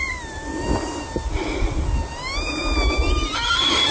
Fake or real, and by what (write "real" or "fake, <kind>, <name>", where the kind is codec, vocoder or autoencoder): real